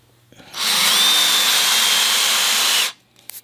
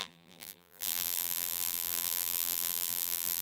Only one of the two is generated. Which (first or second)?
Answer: second